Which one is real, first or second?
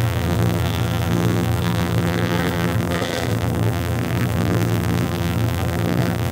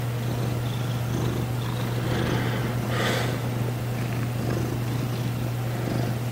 second